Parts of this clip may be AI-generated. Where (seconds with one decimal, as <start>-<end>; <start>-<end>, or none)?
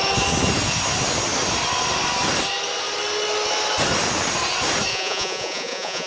4.9-6.1